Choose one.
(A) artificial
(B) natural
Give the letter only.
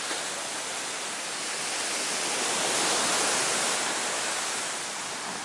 B